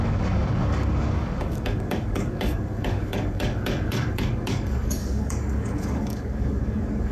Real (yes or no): no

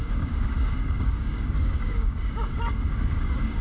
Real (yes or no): no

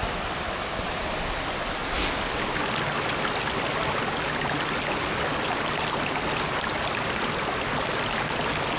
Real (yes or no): yes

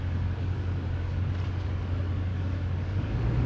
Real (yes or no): no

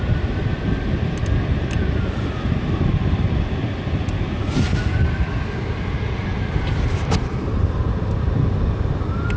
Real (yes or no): yes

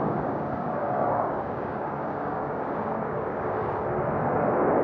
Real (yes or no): no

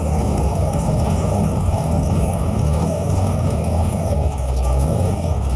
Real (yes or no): no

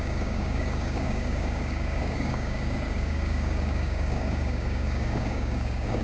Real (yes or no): no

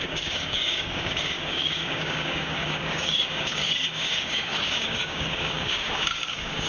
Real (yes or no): no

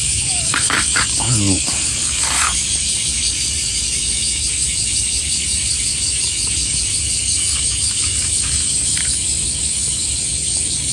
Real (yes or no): no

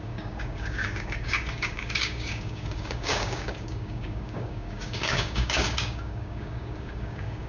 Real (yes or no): no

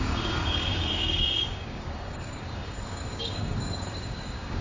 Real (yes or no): no